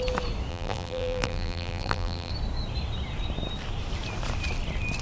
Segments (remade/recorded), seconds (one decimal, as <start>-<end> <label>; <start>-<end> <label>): 0.0-0.5 recorded; 0.5-2.3 remade; 2.3-5.0 recorded